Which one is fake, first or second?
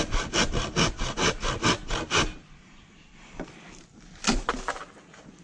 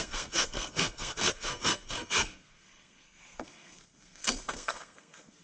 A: second